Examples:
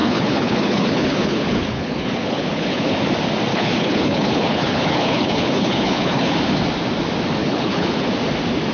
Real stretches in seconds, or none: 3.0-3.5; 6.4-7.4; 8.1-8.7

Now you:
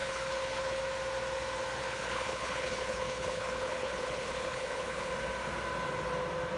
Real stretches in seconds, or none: 0.8-1.8; 5.1-6.6

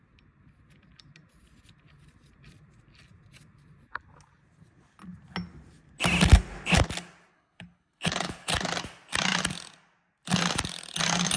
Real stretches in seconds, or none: 0.0-7.3; 8.5-11.4

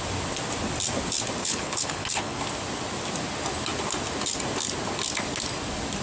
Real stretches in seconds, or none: 0.0-1.4; 2.4-6.0

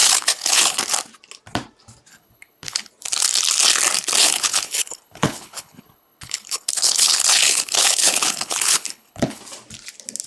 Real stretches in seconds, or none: 0.8-2.1; 2.9-4.2; 9.4-10.3

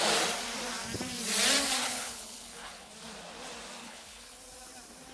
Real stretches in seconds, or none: 0.0-1.8; 2.9-3.8; 4.4-5.1

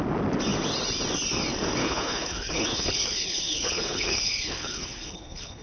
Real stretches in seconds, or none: 0.0-1.8

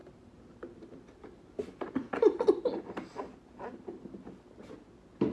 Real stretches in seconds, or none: 0.0-5.3